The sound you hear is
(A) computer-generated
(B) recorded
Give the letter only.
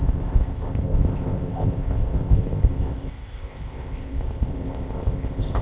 A